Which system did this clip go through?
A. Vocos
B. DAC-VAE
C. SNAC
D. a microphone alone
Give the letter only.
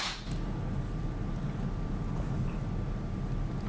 D